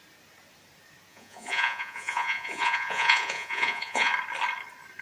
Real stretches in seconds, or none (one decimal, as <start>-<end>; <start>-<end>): 0.0-1.1; 4.1-5.0